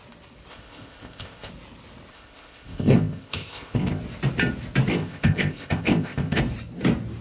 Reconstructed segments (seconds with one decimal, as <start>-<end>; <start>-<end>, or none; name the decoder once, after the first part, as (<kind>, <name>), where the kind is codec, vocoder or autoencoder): 0.5-1.5 (codec, ZipCodec); 2.1-4.0; 4.9-6.4